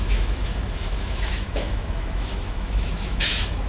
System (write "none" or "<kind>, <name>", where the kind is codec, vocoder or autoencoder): autoencoder, DAC-VAE